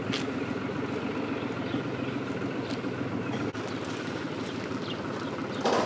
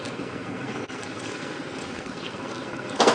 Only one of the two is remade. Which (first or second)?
second